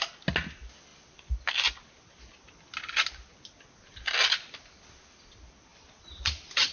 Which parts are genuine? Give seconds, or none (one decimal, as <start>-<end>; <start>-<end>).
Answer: 0.0-5.7